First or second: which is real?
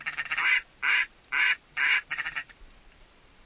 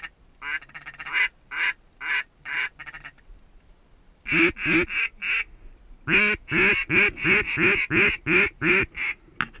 second